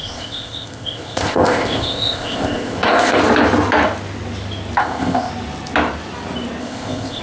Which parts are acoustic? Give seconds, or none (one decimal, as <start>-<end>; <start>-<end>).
3.2-4.8; 5.3-6.6